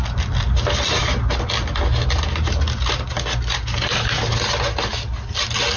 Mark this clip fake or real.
real